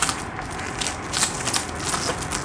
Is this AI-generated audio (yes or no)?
no